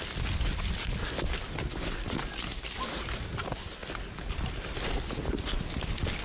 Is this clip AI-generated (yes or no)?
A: no